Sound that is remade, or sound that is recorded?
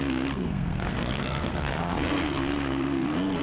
remade